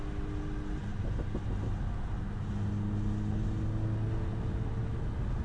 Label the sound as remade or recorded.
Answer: recorded